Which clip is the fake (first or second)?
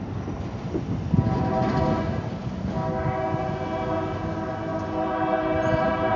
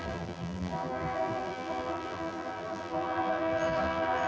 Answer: second